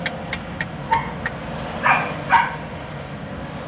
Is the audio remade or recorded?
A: recorded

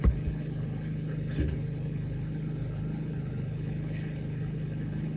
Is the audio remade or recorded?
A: remade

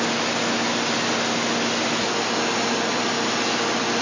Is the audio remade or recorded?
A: recorded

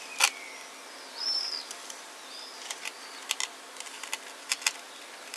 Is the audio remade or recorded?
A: recorded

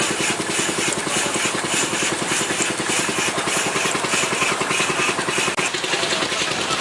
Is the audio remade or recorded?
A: recorded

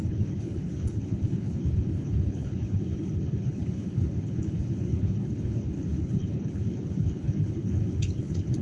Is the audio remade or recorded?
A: remade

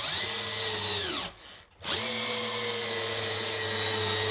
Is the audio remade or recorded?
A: recorded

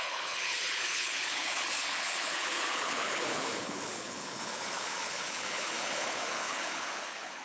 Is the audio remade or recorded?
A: remade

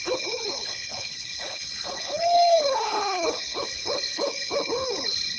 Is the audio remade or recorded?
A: remade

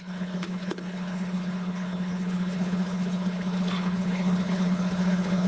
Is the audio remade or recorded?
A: remade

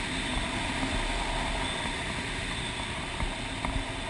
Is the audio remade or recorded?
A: recorded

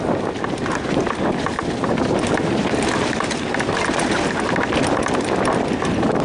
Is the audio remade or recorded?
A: recorded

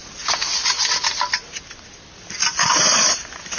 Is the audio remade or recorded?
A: recorded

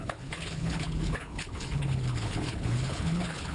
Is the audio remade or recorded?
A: remade